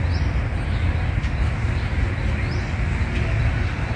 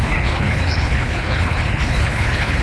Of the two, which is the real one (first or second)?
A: first